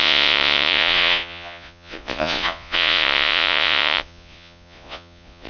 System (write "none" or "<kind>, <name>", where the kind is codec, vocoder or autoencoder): vocoder, Vocos